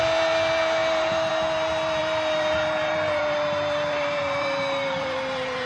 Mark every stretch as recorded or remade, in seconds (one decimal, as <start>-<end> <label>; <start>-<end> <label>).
0.0-0.8 recorded; 0.8-1.3 remade; 1.3-2.0 recorded; 2.0-5.7 remade

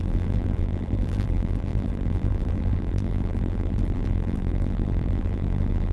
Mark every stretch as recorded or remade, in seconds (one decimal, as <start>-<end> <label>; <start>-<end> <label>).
0.0-5.9 remade